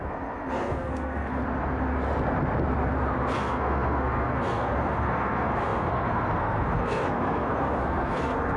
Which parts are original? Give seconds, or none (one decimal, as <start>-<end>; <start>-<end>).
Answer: 1.4-3.4